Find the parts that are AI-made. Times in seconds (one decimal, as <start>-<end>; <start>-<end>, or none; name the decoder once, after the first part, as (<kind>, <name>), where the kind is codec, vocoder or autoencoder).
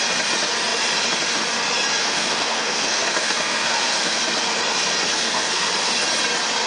2.0-4.2 (codec, SNAC); 5.1-5.7